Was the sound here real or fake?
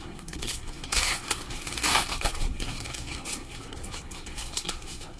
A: fake